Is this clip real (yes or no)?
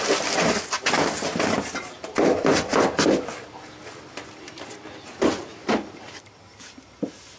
yes